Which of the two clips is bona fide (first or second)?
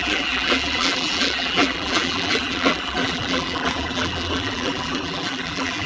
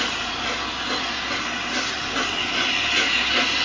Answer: second